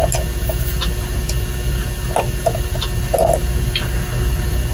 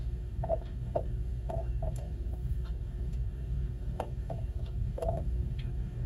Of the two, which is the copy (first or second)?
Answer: second